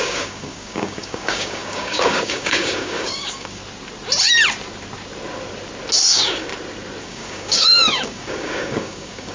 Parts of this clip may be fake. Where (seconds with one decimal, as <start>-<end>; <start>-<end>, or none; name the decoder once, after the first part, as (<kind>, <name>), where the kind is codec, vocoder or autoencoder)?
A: 0.0-3.6 (codec, DAC); 6.0-6.5; 7.0-9.3